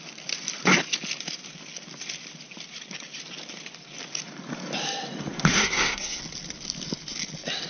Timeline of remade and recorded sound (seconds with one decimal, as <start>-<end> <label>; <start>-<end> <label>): 0.0-5.5 recorded; 5.5-6.2 remade; 6.2-7.7 recorded